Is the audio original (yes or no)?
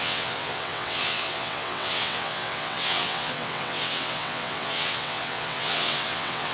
no